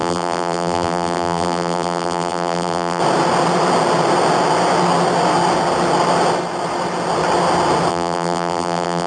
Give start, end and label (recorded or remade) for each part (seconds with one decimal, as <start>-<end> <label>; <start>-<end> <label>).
0.0-3.0 remade; 3.0-7.9 recorded; 7.9-9.1 remade